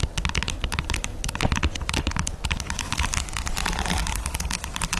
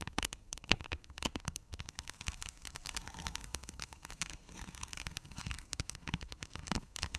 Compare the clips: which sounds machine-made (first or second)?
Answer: second